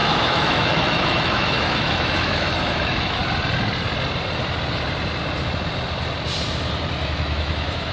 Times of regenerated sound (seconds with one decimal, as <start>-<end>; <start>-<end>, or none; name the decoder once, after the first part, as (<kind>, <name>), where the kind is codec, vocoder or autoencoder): 0.0-3.2 (autoencoder, DAC-VAE); 7.0-7.9